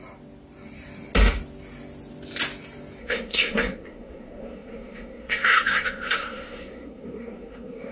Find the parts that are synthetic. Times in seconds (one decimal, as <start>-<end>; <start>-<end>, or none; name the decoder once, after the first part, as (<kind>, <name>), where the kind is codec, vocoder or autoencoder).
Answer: 3.0-7.9 (codec, SNAC)